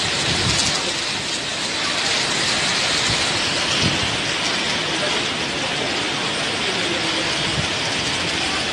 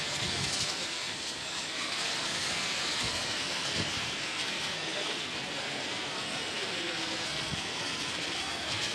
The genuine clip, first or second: first